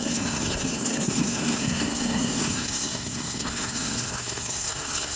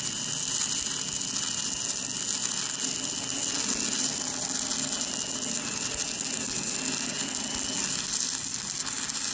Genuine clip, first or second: second